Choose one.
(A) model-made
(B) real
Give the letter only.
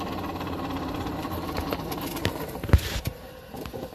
A